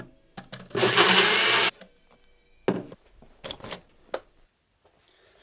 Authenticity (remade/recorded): recorded